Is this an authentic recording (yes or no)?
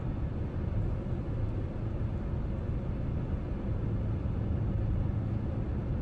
yes